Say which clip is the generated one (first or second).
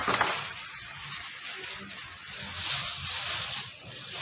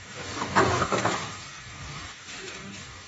second